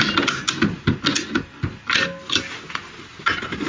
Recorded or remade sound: recorded